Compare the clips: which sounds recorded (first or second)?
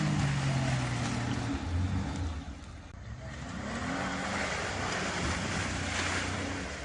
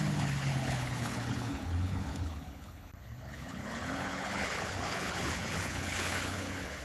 first